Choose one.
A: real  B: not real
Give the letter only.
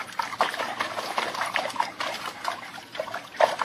B